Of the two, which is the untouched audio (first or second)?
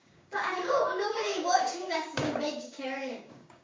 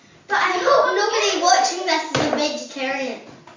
second